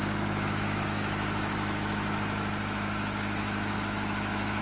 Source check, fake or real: fake